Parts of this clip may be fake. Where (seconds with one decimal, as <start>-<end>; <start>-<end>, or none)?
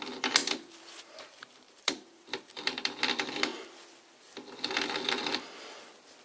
0.4-3.0